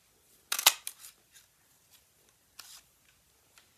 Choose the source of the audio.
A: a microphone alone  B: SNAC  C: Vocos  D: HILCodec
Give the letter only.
A